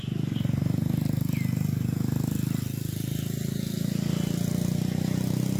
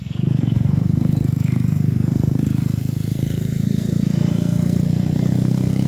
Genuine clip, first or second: first